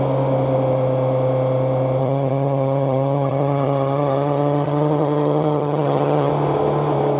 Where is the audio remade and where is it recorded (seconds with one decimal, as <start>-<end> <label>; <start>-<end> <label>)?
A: 0.0-2.0 recorded; 2.0-6.3 remade; 6.3-7.2 recorded